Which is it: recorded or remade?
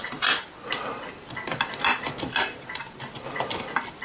recorded